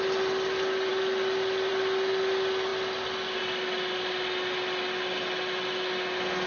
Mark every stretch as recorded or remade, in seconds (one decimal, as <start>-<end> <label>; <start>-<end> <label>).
0.0-6.5 recorded